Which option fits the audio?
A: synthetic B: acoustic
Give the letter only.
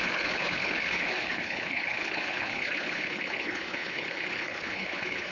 A